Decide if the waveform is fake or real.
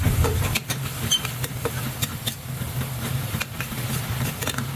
fake